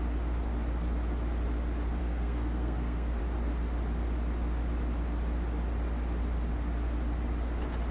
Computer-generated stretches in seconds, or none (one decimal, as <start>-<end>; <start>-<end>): 2.0-3.2